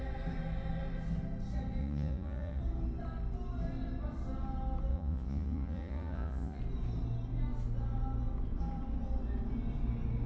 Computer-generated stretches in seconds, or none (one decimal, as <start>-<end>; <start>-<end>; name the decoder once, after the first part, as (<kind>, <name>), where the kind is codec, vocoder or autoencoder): 1.8-2.6 (vocoder, Vocos); 4.9-6.6